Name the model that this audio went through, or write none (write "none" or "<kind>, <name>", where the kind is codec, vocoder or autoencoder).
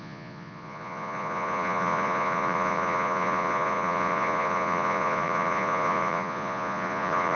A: vocoder, Vocos